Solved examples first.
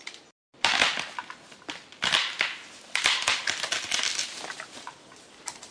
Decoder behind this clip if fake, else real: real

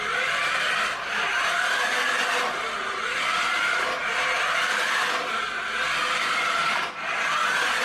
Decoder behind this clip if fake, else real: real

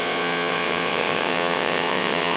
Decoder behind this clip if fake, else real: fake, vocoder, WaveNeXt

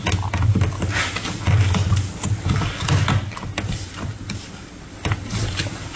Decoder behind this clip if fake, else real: real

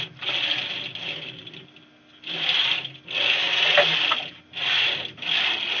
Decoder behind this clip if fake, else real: real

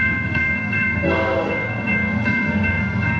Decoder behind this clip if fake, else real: fake, codec, SNAC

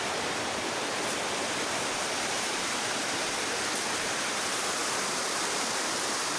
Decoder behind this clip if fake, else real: fake, vocoder, BigVGAN v2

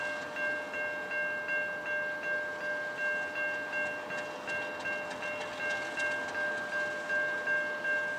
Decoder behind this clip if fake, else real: real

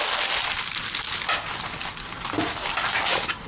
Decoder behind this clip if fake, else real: real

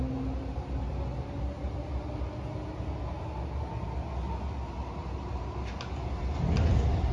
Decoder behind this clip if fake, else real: real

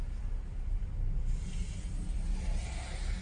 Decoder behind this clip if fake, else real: real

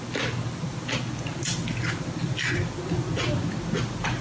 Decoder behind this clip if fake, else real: real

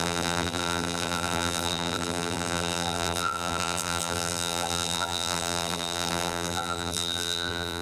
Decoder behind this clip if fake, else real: fake, vocoder, BigVGAN v2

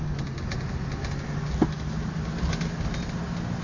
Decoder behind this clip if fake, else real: real